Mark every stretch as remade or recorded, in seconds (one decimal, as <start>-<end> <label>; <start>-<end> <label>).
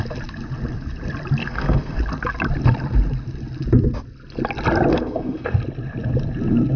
0.0-1.4 recorded; 1.4-2.0 remade; 2.0-4.9 recorded; 4.9-5.6 remade; 5.6-6.8 recorded